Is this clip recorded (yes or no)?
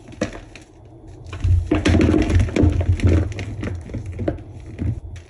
yes